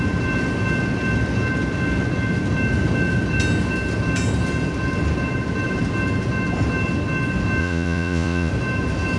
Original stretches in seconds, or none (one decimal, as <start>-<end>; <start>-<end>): 0.0-7.6; 8.5-9.2